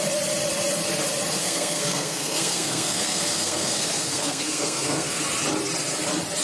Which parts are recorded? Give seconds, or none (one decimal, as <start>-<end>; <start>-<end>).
0.0-1.4; 5.2-6.4